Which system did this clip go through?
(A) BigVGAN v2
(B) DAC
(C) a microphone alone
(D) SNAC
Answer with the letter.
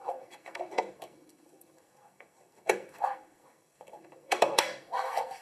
D